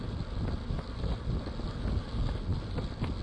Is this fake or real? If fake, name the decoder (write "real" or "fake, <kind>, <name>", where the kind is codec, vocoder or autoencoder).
real